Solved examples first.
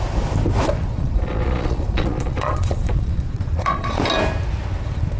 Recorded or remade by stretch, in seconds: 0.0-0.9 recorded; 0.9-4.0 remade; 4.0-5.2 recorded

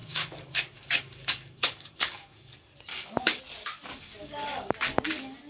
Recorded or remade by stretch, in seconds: 0.0-2.5 remade; 2.5-2.9 recorded; 2.9-3.4 remade; 3.4-3.9 recorded; 3.9-4.7 remade; 4.7-5.5 recorded

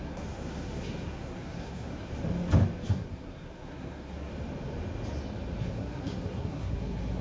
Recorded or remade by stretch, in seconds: 0.0-2.1 remade; 2.1-2.9 recorded; 2.9-4.3 remade; 4.3-5.6 recorded; 5.6-7.2 remade

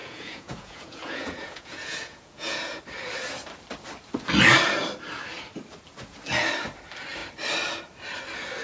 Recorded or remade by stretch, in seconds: 0.0-2.8 remade; 2.8-8.6 recorded